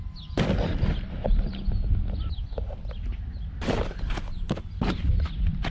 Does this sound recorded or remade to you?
recorded